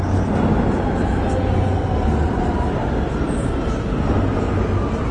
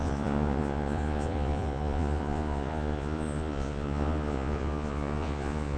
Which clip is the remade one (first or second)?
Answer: second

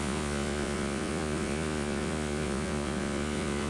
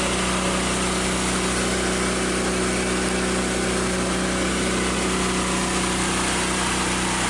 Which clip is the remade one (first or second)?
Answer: first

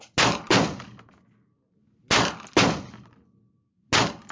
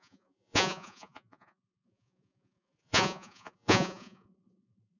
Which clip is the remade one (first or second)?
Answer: second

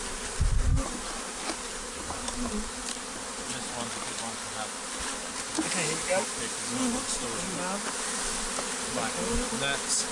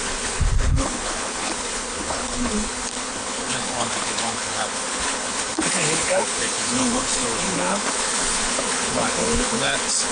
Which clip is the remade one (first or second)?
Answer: second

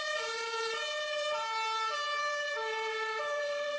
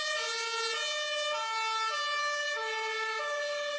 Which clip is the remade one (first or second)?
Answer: first